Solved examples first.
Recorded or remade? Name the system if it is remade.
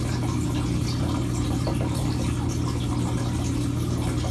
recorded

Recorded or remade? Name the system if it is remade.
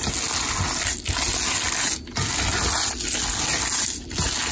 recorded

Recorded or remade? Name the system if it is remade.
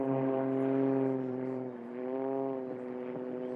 remade, vocoder, BigVGAN v2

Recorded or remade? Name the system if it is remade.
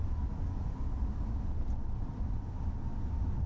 recorded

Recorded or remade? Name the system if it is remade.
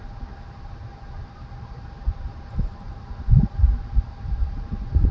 recorded